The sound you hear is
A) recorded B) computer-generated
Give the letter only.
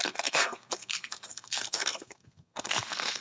B